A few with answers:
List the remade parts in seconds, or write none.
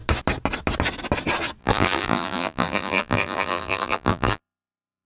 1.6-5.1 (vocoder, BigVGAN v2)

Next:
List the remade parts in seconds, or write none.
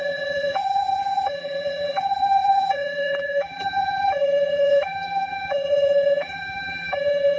0.0-7.4 (vocoder, BigVGAN v2)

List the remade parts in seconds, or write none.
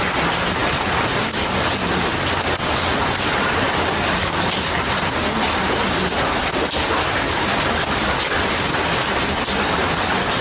none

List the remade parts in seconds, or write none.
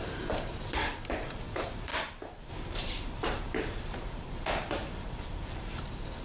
0.0-1.9 (vocoder, BigVGAN v2); 2.5-6.2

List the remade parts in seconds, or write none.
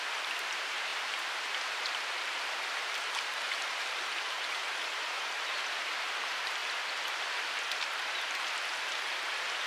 0.0-6.6 (vocoder, BigVGAN v2); 7.8-9.7